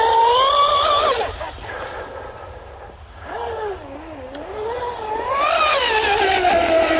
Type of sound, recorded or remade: recorded